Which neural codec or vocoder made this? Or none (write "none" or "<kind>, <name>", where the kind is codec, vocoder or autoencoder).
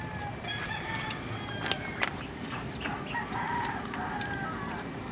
none